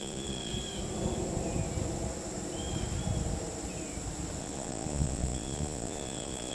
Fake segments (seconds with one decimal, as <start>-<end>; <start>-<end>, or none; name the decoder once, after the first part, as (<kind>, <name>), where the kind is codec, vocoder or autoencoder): 0.0-0.5 (vocoder, Vocos); 4.4-6.5

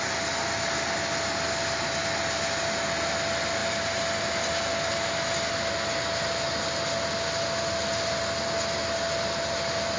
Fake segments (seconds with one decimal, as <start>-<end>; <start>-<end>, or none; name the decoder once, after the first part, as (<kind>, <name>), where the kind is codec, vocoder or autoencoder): none

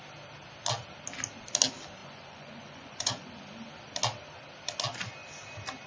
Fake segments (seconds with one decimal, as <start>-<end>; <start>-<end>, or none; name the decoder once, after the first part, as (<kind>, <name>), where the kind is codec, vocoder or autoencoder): 2.0-3.3 (vocoder, Vocos)

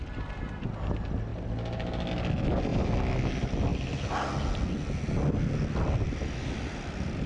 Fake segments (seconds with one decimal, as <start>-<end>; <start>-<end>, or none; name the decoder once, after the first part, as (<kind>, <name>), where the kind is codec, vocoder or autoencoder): none

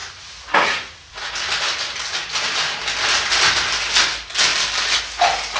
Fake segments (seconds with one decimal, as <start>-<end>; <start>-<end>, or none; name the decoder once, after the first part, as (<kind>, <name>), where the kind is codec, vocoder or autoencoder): 0.0-1.3 (vocoder, Vocos)

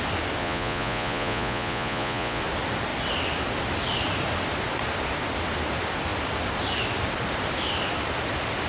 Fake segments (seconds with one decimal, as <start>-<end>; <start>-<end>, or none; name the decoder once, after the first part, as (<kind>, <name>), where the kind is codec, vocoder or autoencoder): 0.4-2.4 (vocoder, Vocos)

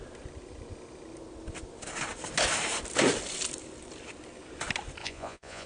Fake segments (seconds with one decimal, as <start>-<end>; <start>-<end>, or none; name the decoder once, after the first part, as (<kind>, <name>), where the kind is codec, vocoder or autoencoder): 5.0-5.7 (vocoder, Vocos)

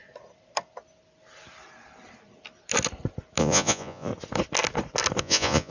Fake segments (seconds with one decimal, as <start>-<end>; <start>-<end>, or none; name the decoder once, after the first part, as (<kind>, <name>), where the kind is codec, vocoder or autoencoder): 3.4-4.1 (vocoder, Vocos); 5.2-5.7